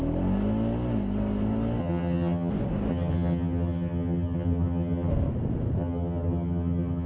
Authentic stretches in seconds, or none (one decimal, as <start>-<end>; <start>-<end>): 0.0-1.8; 2.5-2.9; 5.1-5.8